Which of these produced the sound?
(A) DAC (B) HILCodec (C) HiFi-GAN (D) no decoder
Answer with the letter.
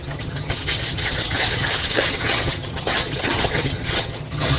C